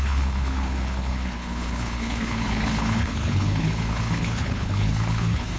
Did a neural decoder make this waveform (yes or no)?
yes